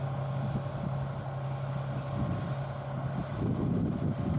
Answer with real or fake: real